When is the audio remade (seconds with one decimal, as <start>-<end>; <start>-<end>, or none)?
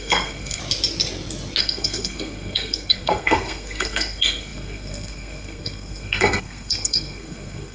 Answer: 0.0-0.6; 1.6-7.7